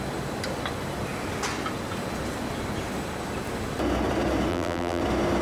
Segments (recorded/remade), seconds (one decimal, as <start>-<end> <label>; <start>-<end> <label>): 0.0-4.5 recorded; 4.5-5.0 remade; 5.0-5.4 recorded